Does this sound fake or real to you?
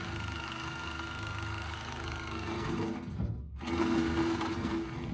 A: fake